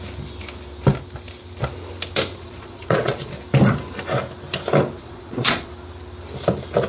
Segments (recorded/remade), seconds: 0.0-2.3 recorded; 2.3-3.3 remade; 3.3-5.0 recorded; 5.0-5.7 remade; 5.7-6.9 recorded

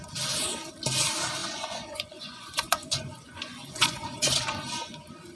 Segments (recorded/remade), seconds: 0.0-1.4 recorded; 1.4-4.4 remade; 4.4-5.4 recorded

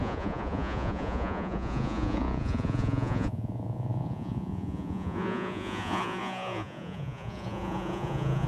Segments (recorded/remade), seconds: 0.0-8.5 remade

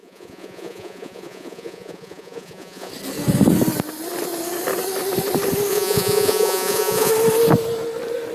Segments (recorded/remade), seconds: 0.0-2.9 remade; 2.9-5.7 recorded; 5.7-7.1 remade; 7.1-8.3 recorded

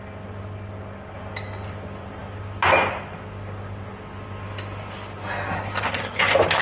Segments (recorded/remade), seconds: 0.0-6.6 recorded

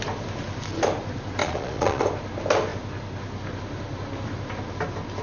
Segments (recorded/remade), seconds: 0.0-1.4 recorded; 1.4-2.0 remade; 2.0-5.2 recorded

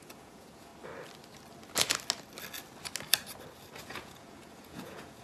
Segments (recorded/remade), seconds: 0.0-0.7 remade; 0.7-3.8 recorded; 3.8-5.2 remade

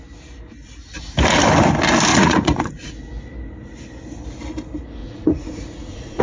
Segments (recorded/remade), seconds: 0.0-2.1 recorded; 2.1-2.9 remade; 2.9-5.0 recorded; 5.0-6.2 remade